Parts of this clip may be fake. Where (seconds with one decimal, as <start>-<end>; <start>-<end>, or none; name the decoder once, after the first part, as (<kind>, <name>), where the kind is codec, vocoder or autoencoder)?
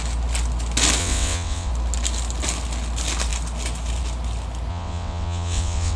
1.0-1.7 (vocoder, WaveNeXt); 4.7-6.0